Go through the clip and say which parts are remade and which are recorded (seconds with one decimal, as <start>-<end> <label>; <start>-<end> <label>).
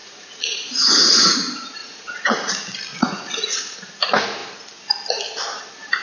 0.0-1.3 remade; 1.3-1.8 recorded; 1.8-2.5 remade; 2.5-2.9 recorded; 2.9-3.9 remade; 3.9-6.0 recorded